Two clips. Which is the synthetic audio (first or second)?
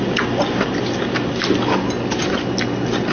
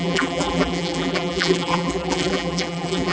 second